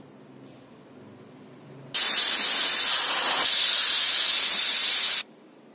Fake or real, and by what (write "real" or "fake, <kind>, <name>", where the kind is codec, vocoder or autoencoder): real